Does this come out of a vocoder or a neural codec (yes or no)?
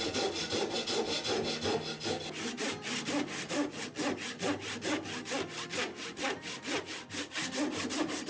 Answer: no